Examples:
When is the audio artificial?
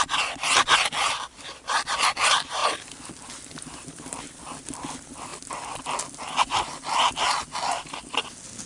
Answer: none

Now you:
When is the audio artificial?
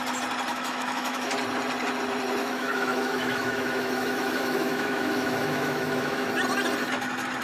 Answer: 0.5-1.3 (autoencoder, DAC-VAE); 2.4-6.3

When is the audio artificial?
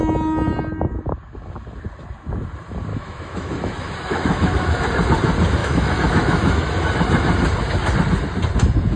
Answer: 2.9-4.8 (autoencoder, DAC-VAE); 5.6-6.8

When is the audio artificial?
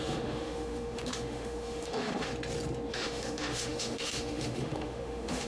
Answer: 0.0-2.3 (autoencoder, DAC-VAE); 2.9-5.5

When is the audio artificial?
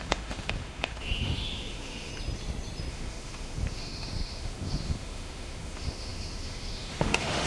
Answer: 0.0-2.1 (autoencoder, DAC-VAE); 2.9-7.5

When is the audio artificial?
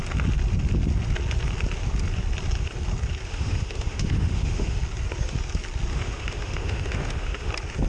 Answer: 3.3-4.8 (autoencoder, DAC-VAE); 5.9-7.5